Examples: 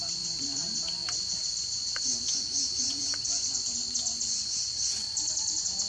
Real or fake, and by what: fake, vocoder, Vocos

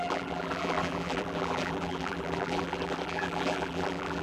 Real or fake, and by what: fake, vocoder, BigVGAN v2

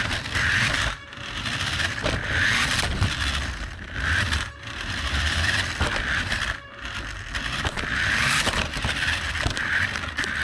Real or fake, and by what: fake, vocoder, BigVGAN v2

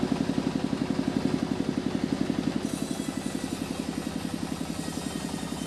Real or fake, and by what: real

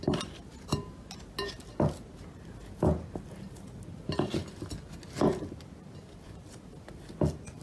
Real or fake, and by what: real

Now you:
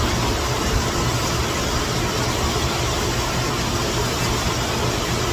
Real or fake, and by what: real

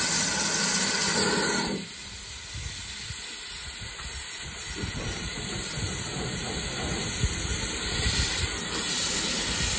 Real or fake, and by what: real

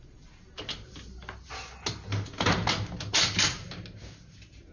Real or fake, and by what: real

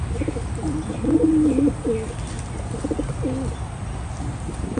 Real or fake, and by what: real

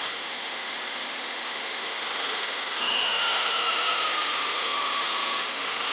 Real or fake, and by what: fake, autoencoder, DAC-VAE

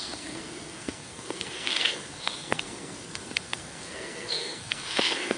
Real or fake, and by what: fake, codec, SNAC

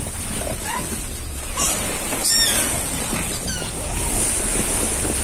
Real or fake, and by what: fake, vocoder, BigVGAN v2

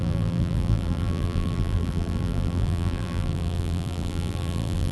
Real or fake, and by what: fake, vocoder, BigVGAN v2